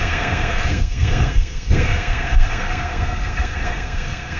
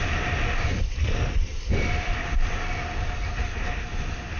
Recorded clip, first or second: second